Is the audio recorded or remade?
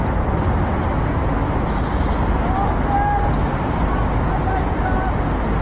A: recorded